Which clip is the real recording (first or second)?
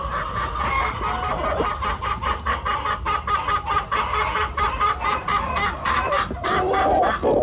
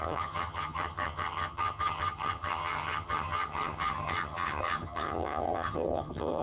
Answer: first